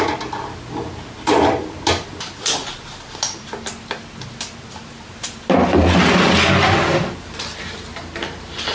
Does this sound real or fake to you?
real